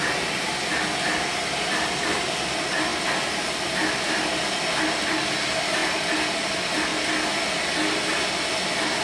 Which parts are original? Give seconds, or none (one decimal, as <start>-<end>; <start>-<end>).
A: 0.0-9.0